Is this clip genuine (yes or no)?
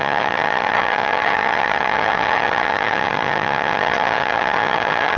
no